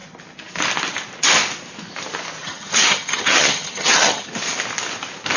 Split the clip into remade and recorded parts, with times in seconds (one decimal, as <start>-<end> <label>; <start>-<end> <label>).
0.0-2.4 recorded; 2.4-4.3 remade; 4.3-5.4 recorded